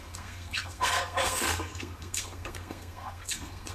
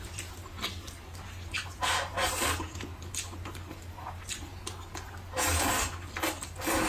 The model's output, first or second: first